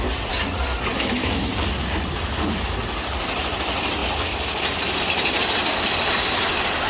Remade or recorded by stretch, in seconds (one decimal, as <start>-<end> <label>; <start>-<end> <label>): 0.0-0.9 recorded; 0.9-1.5 remade; 1.5-6.9 recorded

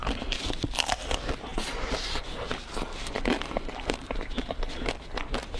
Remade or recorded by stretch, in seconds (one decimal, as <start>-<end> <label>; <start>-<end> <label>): 0.0-0.5 remade; 0.5-1.5 recorded; 1.5-4.9 remade; 4.9-5.6 recorded

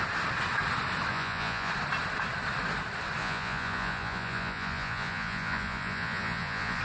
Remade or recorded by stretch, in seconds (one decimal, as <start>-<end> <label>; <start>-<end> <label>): 0.0-1.1 recorded; 1.1-1.7 remade; 1.7-3.2 recorded; 3.2-6.8 remade

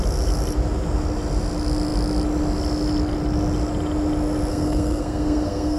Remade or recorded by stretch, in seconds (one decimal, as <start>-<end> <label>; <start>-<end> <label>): 0.0-4.5 recorded; 4.5-5.8 remade

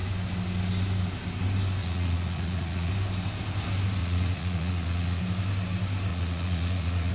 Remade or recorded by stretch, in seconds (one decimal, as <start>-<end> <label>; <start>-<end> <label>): 0.0-1.8 recorded; 1.8-2.9 remade; 2.9-4.0 recorded; 4.0-5.2 remade; 5.2-6.1 recorded; 6.1-7.1 remade

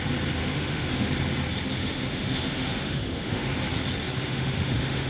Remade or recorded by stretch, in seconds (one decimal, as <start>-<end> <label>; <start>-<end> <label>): 0.0-0.4 recorded; 0.4-1.1 remade; 1.1-1.8 recorded; 1.8-3.5 remade; 3.5-4.2 recorded; 4.2-5.1 remade

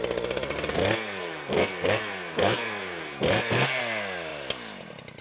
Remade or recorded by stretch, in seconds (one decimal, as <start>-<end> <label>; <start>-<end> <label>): 0.0-0.7 recorded; 0.7-3.8 remade; 3.8-5.2 recorded

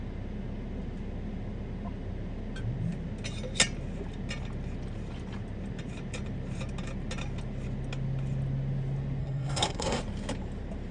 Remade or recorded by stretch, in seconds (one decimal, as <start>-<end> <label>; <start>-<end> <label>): 0.0-9.2 recorded; 9.2-10.0 remade; 10.0-10.9 recorded